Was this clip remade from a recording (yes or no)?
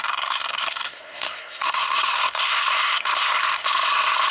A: yes